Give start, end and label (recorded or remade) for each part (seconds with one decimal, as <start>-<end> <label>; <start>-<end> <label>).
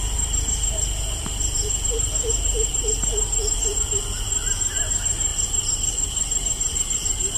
0.0-5.3 recorded; 5.3-7.4 remade